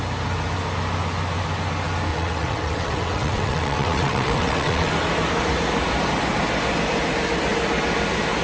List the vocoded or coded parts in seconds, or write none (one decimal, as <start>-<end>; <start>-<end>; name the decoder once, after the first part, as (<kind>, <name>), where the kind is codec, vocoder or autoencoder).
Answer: 2.1-4.9 (vocoder, WaveNeXt)